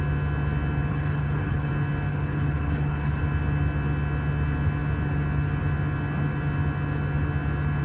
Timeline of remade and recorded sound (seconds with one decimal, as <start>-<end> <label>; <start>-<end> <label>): 0.0-0.9 recorded; 0.9-1.7 remade; 1.7-2.1 recorded; 2.1-3.2 remade; 3.2-7.8 recorded